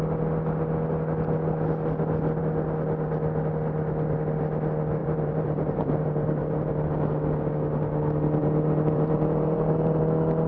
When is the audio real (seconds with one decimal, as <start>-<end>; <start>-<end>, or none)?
0.0-5.0; 6.7-8.4; 10.0-10.5